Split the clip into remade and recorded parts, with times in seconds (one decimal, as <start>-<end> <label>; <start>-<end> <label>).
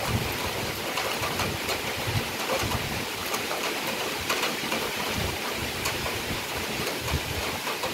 0.0-1.7 recorded; 1.7-2.6 remade; 2.6-3.2 recorded; 3.2-7.4 remade; 7.4-7.9 recorded